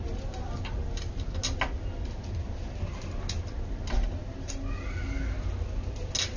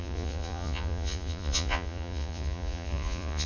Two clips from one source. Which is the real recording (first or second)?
first